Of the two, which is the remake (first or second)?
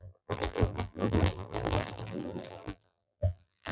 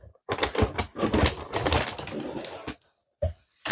first